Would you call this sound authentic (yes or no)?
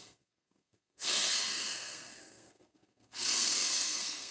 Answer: no